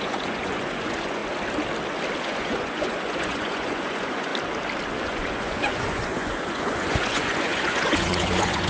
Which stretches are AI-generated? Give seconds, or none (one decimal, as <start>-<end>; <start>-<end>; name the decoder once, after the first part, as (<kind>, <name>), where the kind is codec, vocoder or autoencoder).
0.0-1.2 (vocoder, Vocos); 2.2-4.3; 5.0-8.7